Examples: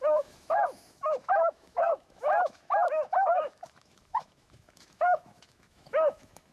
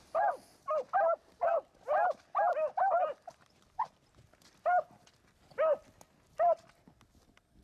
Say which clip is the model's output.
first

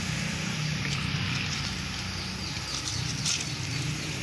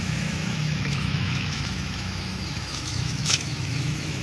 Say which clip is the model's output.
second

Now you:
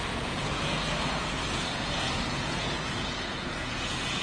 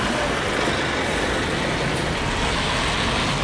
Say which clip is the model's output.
first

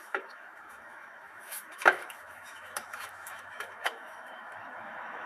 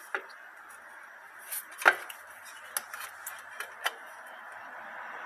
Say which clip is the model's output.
first